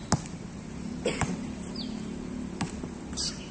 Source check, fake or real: real